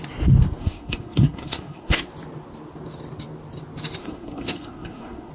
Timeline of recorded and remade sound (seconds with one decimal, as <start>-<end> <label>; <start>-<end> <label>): 0.0-0.6 recorded; 0.6-2.1 remade; 2.1-4.0 recorded; 4.0-5.3 remade